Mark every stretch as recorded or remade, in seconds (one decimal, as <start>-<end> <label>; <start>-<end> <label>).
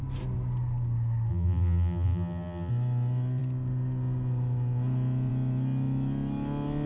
0.0-1.3 recorded; 1.3-2.7 remade; 2.7-6.9 recorded